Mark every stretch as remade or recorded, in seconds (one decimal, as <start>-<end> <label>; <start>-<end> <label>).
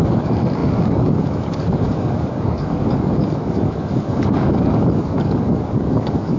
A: 0.0-6.4 remade